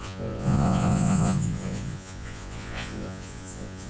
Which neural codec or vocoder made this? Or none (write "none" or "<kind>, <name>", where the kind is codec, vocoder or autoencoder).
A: vocoder, Vocos